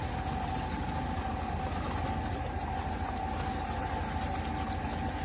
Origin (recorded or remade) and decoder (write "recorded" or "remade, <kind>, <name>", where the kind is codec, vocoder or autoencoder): recorded